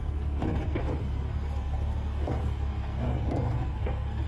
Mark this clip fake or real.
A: fake